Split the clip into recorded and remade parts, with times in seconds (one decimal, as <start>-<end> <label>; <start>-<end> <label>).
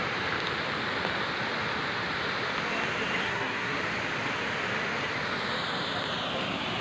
0.0-3.2 recorded; 3.2-3.8 remade; 3.8-6.8 recorded